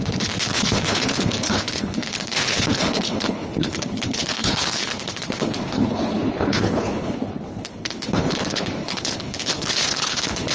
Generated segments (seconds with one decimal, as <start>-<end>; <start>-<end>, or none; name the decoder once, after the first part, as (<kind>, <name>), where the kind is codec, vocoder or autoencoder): 0.0-10.5 (codec, HILCodec)